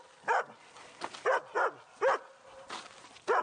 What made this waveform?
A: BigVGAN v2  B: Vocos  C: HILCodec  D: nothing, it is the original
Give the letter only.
D